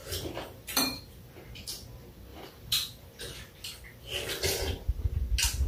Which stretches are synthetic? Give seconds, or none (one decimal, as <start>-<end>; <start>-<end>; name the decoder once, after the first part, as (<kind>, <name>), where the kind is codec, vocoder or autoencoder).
0.0-1.0 (vocoder, BigVGAN v2); 2.3-3.2